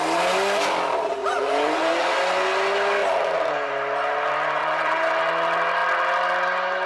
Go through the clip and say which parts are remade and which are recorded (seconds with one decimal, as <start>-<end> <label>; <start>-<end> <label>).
0.0-1.2 recorded; 1.2-1.9 remade; 1.9-4.6 recorded; 4.6-5.1 remade; 5.1-6.9 recorded